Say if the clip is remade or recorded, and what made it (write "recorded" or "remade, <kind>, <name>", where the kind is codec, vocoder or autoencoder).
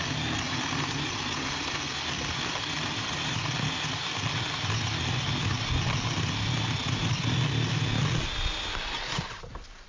recorded